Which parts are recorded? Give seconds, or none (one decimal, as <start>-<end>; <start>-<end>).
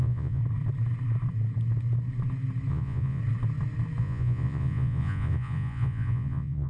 0.4-2.7; 3.2-4.0